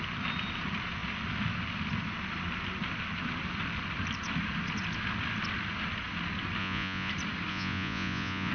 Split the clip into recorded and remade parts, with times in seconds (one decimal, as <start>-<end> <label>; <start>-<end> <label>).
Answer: 0.0-6.6 recorded; 6.6-7.1 remade; 7.1-7.5 recorded; 7.5-8.5 remade